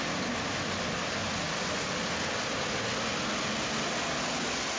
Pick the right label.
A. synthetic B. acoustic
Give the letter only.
B